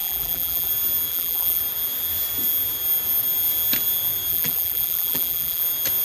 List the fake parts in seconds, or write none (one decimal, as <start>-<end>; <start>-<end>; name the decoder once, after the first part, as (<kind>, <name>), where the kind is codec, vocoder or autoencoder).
0.0-0.7 (vocoder, BigVGAN v2); 1.1-1.6; 4.3-5.6